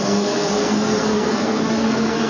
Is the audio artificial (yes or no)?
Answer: yes